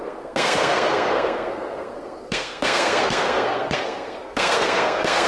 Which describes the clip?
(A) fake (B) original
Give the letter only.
A